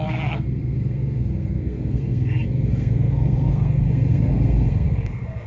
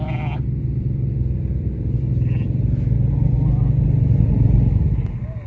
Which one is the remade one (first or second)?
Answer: first